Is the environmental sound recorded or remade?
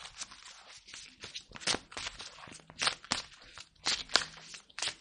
recorded